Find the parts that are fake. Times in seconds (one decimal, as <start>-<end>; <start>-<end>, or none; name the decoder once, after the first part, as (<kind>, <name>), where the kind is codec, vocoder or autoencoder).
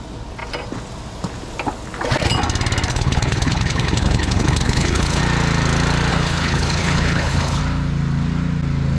2.9-5.2 (codec, HILCodec); 6.1-7.6